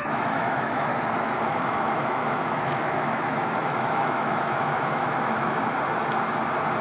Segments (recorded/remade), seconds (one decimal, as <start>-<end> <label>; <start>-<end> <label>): 0.0-0.9 remade; 0.9-1.4 recorded; 1.4-5.7 remade; 5.7-6.8 recorded